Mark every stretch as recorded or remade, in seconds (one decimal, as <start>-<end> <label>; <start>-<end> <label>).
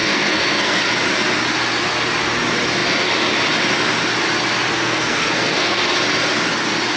0.0-0.8 remade; 0.8-4.8 recorded; 4.8-5.8 remade; 5.8-7.0 recorded